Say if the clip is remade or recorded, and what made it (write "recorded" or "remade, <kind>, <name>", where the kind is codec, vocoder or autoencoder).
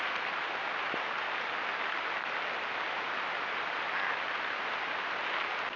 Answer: recorded